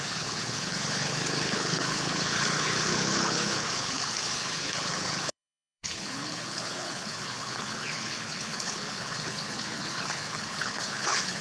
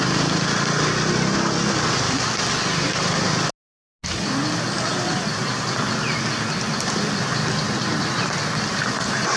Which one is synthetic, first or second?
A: first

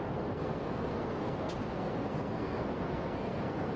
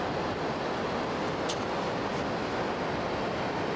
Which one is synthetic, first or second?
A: first